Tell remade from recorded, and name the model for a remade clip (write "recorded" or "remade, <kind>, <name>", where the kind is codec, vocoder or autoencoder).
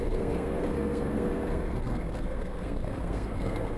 remade, codec, SNAC